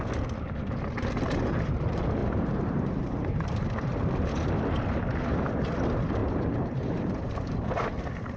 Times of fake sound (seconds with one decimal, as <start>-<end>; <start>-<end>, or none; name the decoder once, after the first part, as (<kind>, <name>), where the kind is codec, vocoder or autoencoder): 2.2-4.0 (vocoder, BigVGAN v2); 6.2-7.7